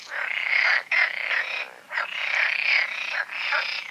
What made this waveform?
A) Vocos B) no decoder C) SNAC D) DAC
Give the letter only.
B